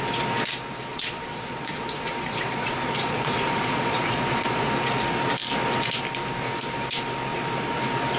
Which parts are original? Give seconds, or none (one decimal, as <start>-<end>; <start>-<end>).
0.0-0.9; 4.7-8.2